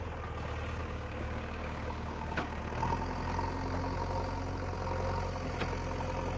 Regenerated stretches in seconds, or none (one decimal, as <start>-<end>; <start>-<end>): 0.8-2.6